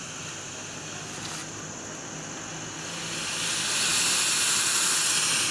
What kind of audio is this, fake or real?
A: real